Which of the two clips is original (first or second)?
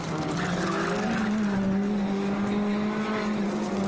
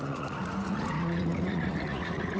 first